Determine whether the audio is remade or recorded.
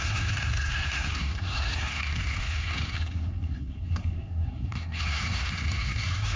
remade